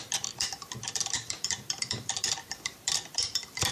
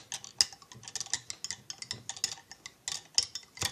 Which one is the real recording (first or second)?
second